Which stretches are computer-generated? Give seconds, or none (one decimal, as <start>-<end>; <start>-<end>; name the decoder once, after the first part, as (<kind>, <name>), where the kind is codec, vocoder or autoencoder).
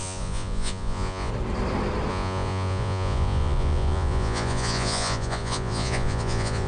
0.0-1.3 (vocoder, Vocos); 2.1-6.7